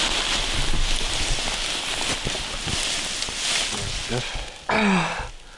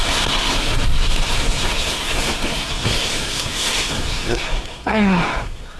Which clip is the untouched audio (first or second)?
first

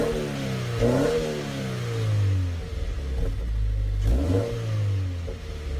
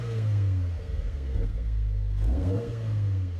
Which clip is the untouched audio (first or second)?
first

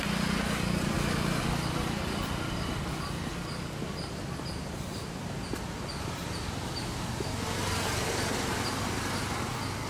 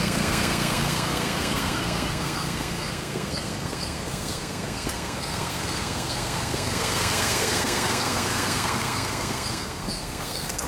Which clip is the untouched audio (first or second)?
first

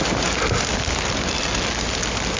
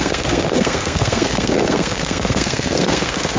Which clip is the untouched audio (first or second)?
first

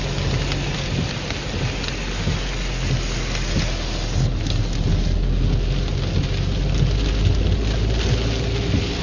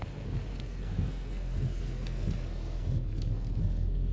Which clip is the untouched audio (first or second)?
first